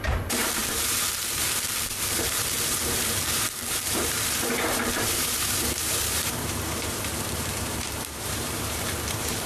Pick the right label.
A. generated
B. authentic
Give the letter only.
A